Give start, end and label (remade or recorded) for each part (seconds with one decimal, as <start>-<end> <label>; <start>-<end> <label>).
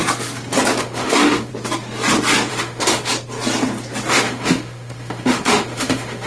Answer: 0.0-0.8 recorded; 0.8-1.5 remade; 1.5-2.5 recorded; 2.5-3.1 remade; 3.1-4.1 recorded; 4.1-6.3 remade